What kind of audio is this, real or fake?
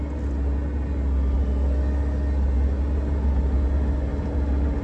real